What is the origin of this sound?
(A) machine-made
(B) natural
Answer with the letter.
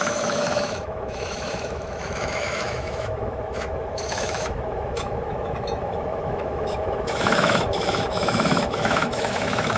A